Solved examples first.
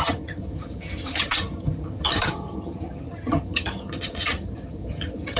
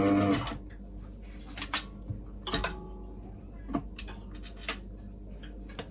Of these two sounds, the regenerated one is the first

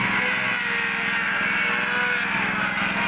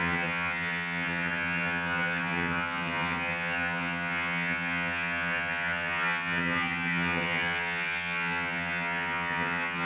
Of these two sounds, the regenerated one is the second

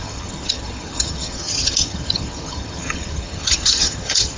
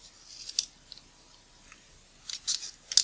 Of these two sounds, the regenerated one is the first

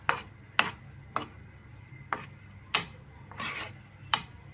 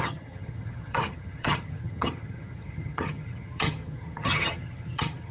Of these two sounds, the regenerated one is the second